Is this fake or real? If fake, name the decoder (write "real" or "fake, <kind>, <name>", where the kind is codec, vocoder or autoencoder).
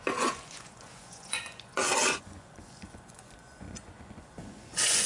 fake, vocoder, Vocos